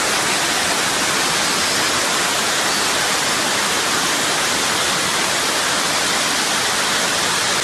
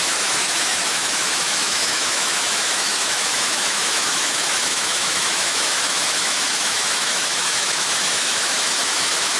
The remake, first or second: second